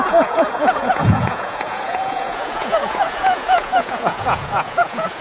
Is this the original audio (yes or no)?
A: no